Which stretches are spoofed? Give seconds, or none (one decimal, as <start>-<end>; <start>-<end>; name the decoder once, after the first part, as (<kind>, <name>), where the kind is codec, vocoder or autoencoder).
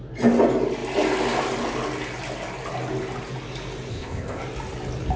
3.9-4.4 (codec, ZipCodec)